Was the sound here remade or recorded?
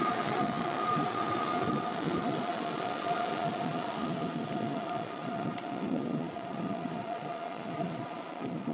remade